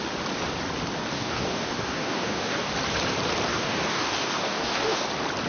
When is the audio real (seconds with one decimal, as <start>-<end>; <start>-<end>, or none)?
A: 0.0-1.1; 2.7-3.5; 5.1-5.5